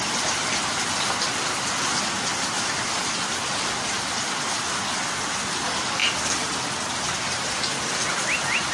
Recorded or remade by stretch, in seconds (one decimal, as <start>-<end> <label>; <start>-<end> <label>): 0.0-8.7 recorded